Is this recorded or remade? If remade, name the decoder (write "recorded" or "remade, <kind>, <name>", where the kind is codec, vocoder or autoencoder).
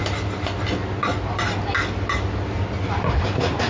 recorded